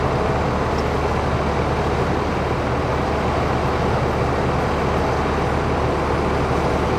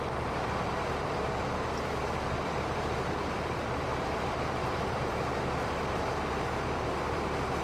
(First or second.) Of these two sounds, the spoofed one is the second